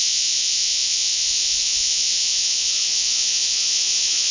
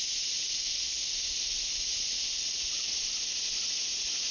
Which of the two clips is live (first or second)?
second